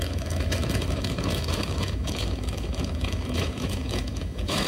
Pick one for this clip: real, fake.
fake